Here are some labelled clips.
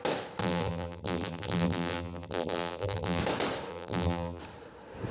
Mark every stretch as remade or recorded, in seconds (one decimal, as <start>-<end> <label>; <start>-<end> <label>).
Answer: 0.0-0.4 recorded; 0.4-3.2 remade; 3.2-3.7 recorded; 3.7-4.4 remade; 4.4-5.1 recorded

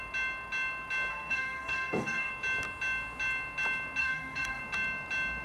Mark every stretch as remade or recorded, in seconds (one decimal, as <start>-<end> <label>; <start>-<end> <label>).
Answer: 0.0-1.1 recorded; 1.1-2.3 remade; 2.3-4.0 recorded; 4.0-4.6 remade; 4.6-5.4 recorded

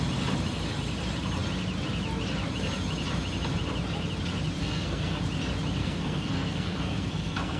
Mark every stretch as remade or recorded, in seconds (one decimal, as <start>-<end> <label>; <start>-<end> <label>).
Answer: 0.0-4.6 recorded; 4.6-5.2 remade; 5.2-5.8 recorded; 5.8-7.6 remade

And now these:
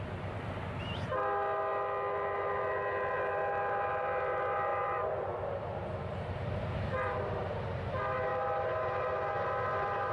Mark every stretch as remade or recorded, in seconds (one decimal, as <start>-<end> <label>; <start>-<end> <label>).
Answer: 0.0-10.1 recorded

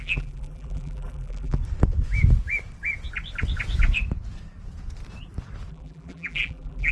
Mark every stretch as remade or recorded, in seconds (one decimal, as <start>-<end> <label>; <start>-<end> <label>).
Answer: 0.0-1.6 remade; 1.6-5.7 recorded; 5.7-6.9 remade